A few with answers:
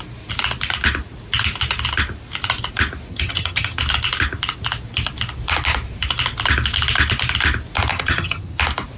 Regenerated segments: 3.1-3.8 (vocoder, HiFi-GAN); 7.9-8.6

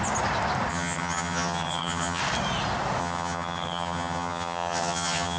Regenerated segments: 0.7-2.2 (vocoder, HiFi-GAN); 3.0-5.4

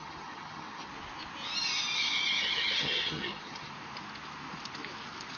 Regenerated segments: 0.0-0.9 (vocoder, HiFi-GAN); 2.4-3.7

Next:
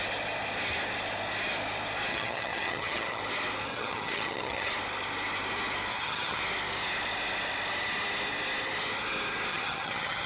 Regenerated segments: 2.1-3.2 (vocoder, HiFi-GAN); 3.7-4.7; 5.9-6.4; 9.5-10.3

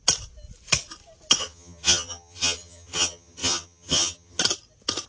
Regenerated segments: 1.4-4.4 (vocoder, HiFi-GAN)